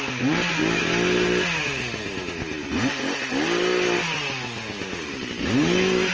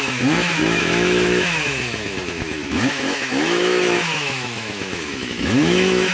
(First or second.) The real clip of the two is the first